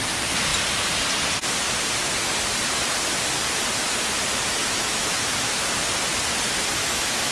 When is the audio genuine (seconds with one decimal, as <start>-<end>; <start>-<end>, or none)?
0.0-4.6; 5.2-6.8